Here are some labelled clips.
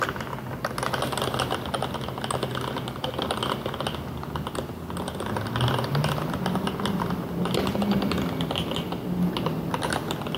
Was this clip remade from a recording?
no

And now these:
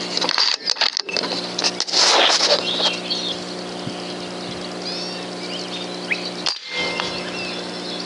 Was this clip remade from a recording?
no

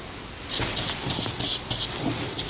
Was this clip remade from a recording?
no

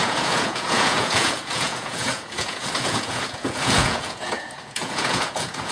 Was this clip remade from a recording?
yes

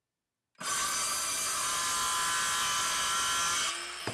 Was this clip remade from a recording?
no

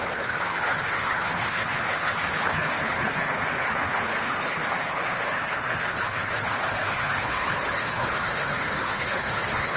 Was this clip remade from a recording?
yes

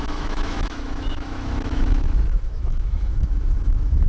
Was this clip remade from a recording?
yes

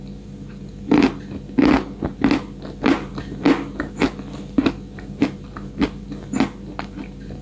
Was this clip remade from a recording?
no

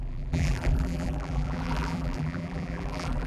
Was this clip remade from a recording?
yes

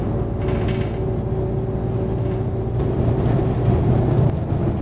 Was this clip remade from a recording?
no